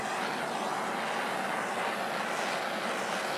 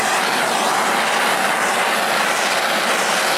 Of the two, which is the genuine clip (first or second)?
first